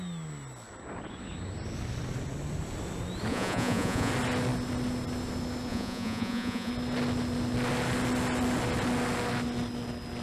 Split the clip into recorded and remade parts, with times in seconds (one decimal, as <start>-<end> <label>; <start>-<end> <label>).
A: 0.0-3.3 recorded; 3.3-4.1 remade; 4.1-5.7 recorded; 5.7-6.7 remade; 6.7-10.2 recorded